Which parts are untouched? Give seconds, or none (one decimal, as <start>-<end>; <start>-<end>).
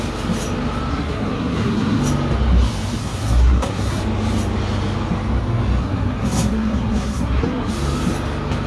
0.0-0.9; 2.0-3.0; 4.0-5.8; 7.7-8.7